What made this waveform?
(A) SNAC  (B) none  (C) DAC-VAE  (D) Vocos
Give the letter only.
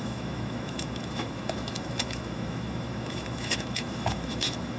C